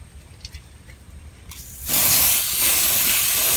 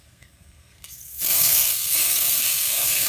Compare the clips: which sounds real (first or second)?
first